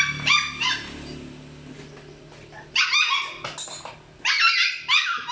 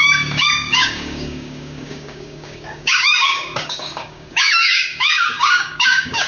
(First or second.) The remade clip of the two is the second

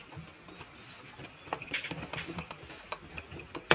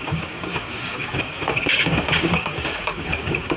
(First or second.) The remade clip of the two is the second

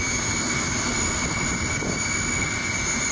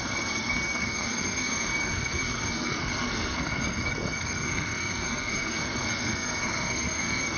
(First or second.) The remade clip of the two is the second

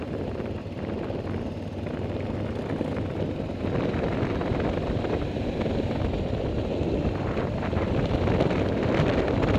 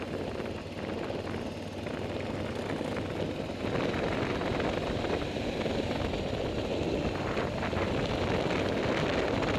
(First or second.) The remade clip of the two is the first